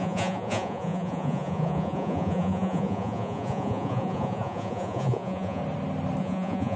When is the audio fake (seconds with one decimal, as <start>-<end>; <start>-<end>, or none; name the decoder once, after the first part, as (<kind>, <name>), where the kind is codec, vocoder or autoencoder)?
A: 0.0-5.6 (vocoder, Vocos); 6.2-6.8